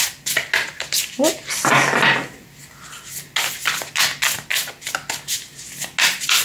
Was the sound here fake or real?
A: real